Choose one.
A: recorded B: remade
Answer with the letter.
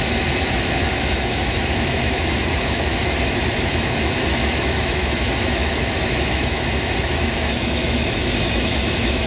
B